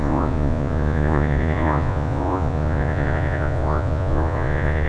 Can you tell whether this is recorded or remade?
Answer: remade